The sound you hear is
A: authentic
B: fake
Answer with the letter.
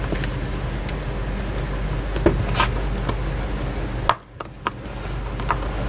A